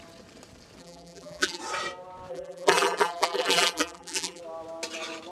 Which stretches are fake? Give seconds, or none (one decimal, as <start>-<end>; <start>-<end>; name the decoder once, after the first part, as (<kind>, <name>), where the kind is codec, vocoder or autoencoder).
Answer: 0.8-1.6 (vocoder, BigVGAN v2); 2.3-4.4